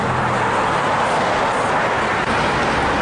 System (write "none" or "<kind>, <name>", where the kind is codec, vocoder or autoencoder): none